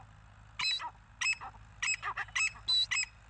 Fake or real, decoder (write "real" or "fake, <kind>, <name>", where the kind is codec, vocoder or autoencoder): real